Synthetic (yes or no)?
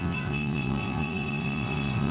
yes